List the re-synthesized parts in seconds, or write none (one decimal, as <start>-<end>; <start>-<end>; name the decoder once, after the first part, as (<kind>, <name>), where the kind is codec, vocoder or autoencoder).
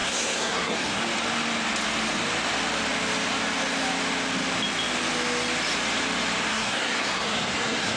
0.0-1.0 (codec, SNAC); 6.5-8.0